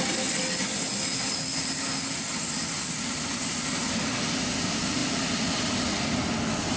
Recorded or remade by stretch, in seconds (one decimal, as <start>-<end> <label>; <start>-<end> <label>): 0.0-6.8 recorded